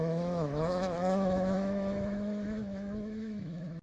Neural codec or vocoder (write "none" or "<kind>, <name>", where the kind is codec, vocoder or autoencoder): autoencoder, DAC-VAE